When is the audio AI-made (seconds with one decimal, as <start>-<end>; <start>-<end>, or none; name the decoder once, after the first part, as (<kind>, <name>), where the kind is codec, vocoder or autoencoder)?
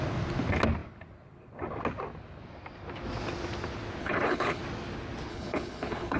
4.0-4.6 (codec, HILCodec); 5.3-6.2